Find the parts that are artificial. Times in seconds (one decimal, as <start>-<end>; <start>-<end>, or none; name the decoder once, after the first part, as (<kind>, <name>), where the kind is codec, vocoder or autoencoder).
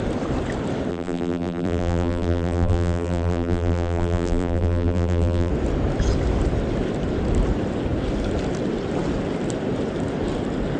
0.9-5.5 (vocoder, BigVGAN v2)